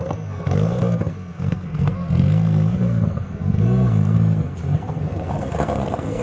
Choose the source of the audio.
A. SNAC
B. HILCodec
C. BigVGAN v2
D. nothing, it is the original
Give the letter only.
A